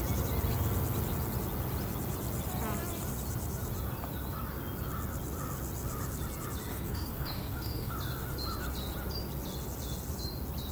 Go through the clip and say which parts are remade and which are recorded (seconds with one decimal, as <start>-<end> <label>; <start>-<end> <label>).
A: 0.0-6.7 recorded; 6.7-7.9 remade; 7.9-10.7 recorded